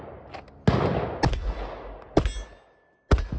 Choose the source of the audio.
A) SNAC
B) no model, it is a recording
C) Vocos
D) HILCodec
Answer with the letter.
B